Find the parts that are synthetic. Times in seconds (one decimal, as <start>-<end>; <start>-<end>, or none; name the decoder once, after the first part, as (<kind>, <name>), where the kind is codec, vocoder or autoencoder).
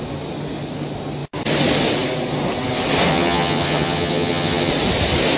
3.1-4.7 (vocoder, HiFi-GAN)